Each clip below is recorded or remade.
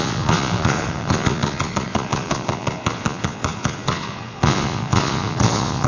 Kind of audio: remade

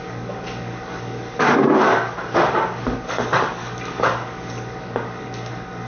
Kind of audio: remade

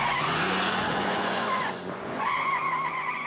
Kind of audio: remade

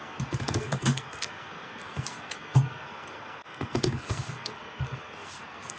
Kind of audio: remade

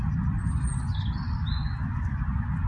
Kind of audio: recorded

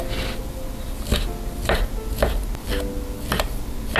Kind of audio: recorded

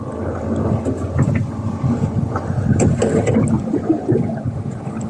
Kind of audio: remade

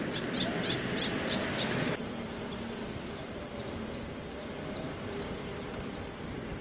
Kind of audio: remade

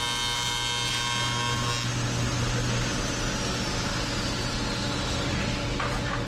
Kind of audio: recorded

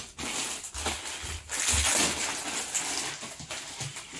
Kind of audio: recorded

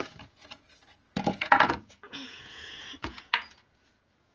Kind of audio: remade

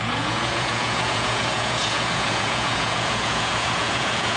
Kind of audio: remade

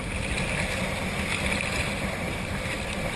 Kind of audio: recorded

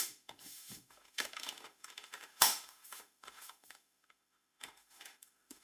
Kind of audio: remade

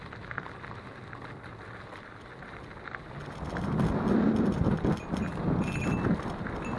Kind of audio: recorded